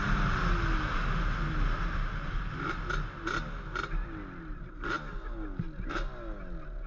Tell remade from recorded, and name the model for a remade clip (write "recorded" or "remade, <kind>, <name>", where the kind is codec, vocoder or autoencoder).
recorded